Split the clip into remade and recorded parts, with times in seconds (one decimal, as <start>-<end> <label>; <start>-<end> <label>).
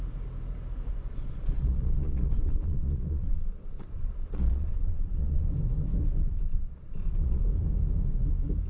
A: 0.0-0.9 recorded; 0.9-5.4 remade; 5.4-6.2 recorded; 6.2-7.4 remade; 7.4-8.7 recorded